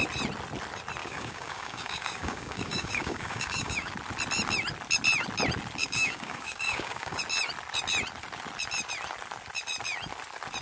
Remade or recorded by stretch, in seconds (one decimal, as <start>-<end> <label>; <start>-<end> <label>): 0.0-1.0 recorded; 1.0-3.9 remade; 3.9-5.8 recorded; 5.8-7.2 remade; 7.2-10.6 recorded